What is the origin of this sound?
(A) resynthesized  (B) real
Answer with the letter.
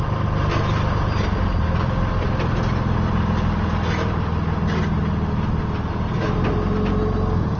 B